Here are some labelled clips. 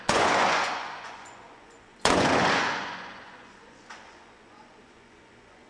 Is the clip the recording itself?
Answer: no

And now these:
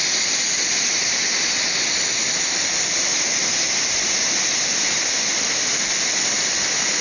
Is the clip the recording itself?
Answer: yes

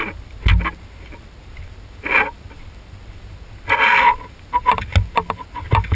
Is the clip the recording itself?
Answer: yes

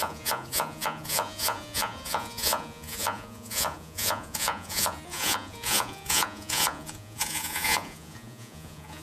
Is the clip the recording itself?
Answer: no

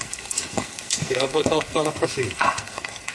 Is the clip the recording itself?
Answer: no